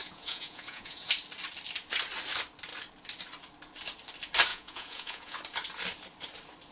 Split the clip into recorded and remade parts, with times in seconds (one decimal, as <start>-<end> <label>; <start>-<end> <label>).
0.0-1.1 remade; 1.1-4.5 recorded; 4.5-5.4 remade; 5.4-6.7 recorded